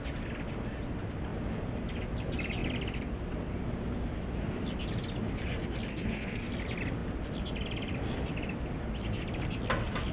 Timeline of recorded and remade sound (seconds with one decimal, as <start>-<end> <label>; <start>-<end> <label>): 0.0-5.9 recorded; 5.9-6.5 remade; 6.5-10.1 recorded